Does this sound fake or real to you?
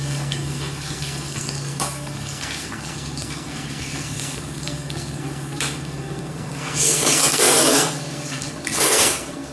fake